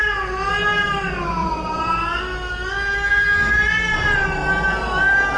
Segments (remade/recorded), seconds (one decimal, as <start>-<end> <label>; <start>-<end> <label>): 0.0-0.5 remade; 0.5-1.4 recorded; 1.4-2.2 remade; 2.2-5.4 recorded